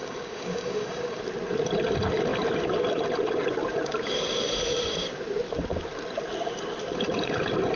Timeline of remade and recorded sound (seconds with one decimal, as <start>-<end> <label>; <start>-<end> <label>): 0.0-1.2 remade; 1.2-7.8 recorded